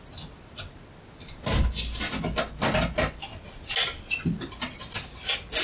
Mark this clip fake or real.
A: real